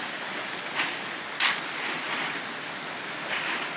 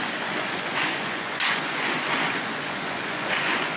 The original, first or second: first